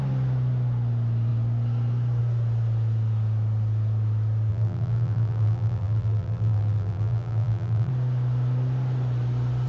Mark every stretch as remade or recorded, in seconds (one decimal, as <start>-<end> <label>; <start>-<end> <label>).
0.0-4.5 recorded; 4.5-7.9 remade; 7.9-9.7 recorded